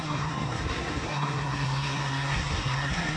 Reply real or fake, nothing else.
fake